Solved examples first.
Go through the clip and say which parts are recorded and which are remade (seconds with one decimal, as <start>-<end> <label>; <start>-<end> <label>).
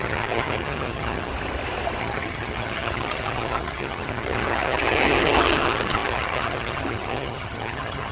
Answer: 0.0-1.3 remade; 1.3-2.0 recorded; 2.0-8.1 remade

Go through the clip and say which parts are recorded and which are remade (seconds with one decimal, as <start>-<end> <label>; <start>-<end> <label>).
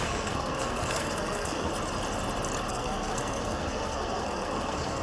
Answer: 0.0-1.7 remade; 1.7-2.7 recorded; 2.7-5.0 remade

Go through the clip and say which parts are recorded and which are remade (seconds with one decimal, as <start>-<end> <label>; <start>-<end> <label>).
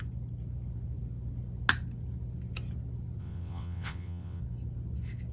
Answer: 0.0-3.2 recorded; 3.2-4.4 remade; 4.4-5.3 recorded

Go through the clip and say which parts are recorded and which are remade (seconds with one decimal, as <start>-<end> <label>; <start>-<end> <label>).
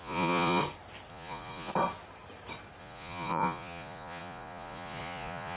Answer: 0.0-0.6 remade; 0.6-1.1 recorded; 1.1-1.7 remade; 1.7-2.8 recorded; 2.8-5.6 remade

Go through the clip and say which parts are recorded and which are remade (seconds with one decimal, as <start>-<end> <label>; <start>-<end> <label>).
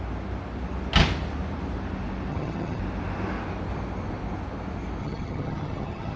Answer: 0.0-2.3 recorded; 2.3-2.8 remade; 2.8-5.0 recorded; 5.0-6.2 remade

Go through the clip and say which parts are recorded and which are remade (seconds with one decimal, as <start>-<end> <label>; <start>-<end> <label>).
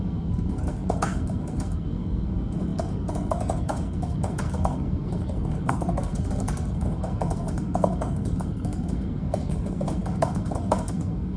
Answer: 0.0-11.4 remade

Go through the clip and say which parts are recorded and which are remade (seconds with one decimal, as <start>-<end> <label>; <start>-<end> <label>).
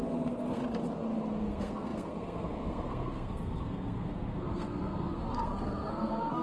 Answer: 0.0-0.6 remade; 0.6-1.4 recorded; 1.4-6.4 remade